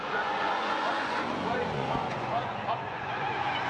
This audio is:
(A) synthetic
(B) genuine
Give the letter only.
A